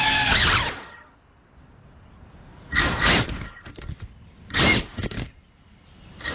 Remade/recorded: recorded